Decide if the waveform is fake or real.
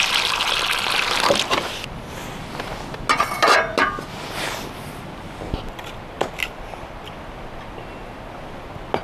real